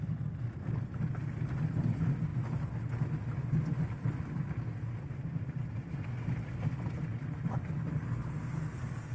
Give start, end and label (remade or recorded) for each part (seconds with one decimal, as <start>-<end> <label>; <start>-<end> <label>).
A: 0.0-9.1 recorded